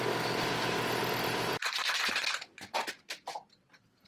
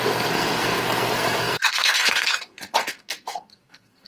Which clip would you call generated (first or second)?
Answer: second